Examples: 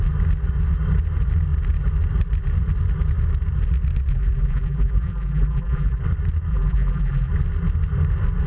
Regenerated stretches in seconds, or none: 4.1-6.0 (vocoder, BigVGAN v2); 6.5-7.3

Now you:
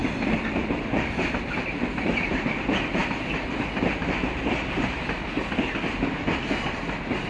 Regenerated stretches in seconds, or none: 0.0-7.3 (vocoder, BigVGAN v2)

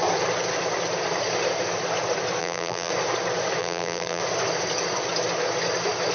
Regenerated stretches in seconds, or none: 2.4-2.9 (vocoder, BigVGAN v2); 3.6-4.2

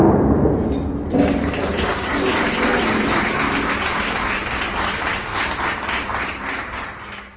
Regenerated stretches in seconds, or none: 0.0-2.1 (vocoder, BigVGAN v2); 3.9-5.3

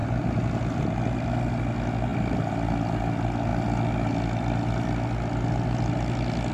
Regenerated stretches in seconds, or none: none